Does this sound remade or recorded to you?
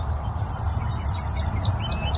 recorded